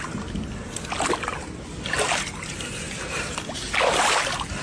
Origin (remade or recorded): recorded